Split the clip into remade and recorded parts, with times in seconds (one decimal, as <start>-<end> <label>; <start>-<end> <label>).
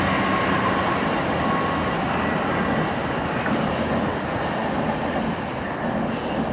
0.0-6.5 recorded